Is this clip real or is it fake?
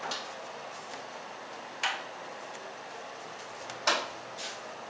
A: real